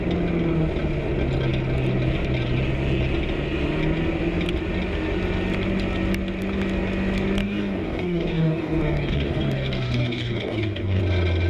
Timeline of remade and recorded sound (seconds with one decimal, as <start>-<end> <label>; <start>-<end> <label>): 0.0-7.4 recorded; 7.4-11.0 remade; 11.0-11.5 recorded